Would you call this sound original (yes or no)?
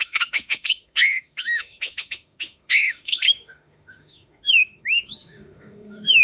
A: no